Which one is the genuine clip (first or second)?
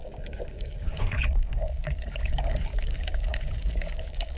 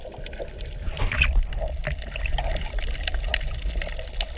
second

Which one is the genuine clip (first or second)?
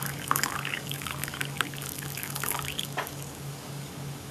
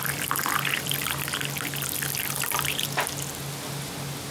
second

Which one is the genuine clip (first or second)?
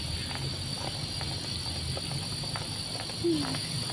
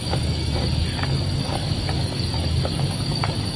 first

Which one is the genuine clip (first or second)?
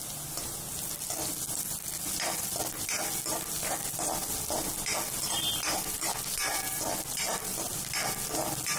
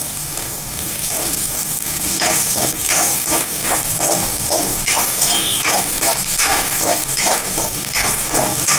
first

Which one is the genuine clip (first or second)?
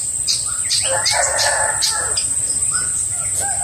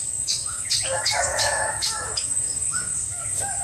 first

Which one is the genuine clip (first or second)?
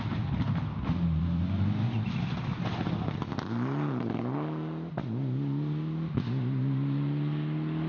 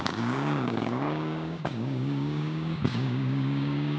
first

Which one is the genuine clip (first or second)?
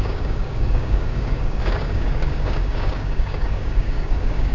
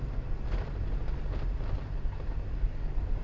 second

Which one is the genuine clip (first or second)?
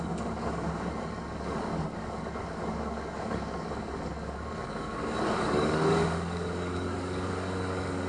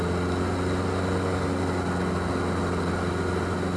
second